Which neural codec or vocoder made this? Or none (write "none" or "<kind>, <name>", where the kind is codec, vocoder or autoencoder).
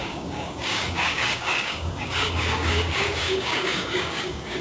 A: codec, DAC